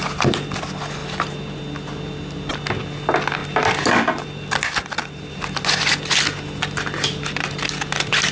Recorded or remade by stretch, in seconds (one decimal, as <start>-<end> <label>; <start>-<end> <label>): 0.0-8.3 recorded